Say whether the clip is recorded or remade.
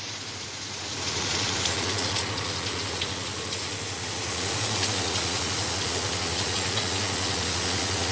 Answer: remade